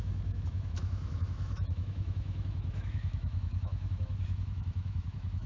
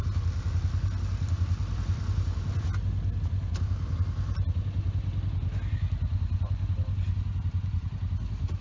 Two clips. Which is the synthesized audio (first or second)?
first